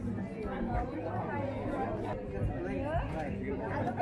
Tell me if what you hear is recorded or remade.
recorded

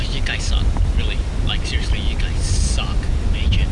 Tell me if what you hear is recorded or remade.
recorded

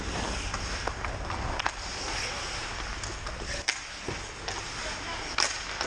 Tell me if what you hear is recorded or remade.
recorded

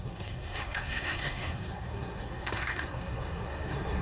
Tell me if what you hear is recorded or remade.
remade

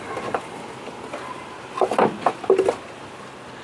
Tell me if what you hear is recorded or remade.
recorded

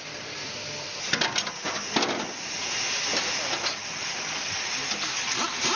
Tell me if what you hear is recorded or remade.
recorded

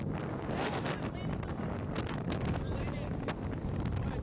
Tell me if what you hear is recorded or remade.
recorded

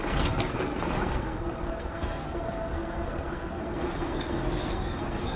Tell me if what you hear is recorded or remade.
remade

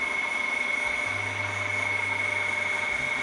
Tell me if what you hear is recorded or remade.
recorded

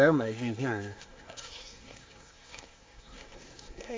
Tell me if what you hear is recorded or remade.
remade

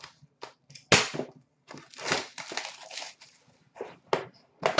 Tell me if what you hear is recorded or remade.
recorded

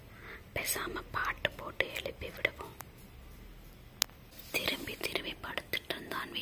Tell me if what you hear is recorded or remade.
recorded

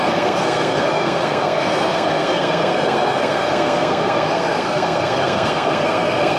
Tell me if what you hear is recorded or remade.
remade